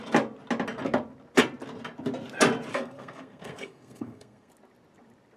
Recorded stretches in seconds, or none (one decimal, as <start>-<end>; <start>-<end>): 0.0-2.7; 4.5-5.4